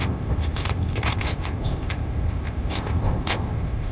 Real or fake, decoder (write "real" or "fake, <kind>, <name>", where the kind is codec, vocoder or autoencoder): fake, codec, ZipCodec